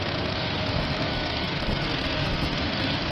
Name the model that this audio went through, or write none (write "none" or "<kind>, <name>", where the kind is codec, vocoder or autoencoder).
codec, SNAC